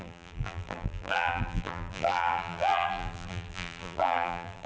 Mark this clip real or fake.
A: fake